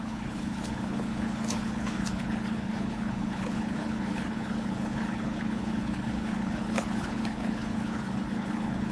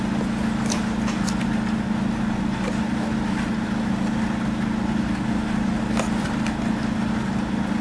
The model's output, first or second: first